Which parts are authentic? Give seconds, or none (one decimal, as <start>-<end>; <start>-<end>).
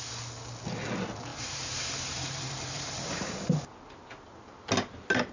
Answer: 0.0-1.3; 3.4-5.3